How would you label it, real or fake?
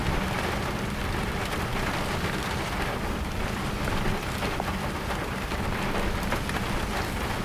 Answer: real